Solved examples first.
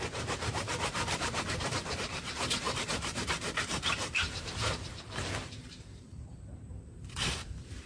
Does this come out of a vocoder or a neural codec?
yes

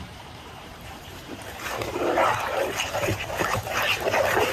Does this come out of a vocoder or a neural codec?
yes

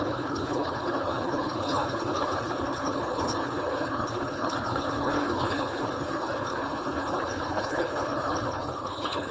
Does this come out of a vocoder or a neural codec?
yes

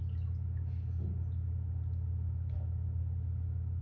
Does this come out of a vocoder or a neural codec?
no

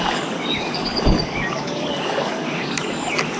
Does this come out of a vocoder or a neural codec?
yes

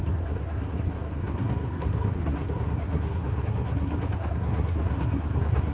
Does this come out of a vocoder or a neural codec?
yes